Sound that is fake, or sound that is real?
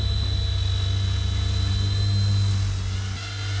real